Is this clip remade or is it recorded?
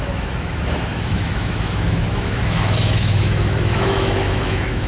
remade